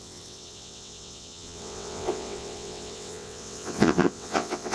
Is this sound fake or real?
fake